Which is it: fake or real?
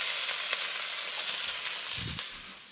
real